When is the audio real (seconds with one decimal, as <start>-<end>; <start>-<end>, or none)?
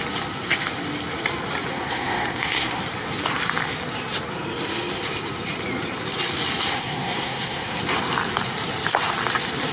0.0-1.7; 2.8-6.7; 7.8-9.7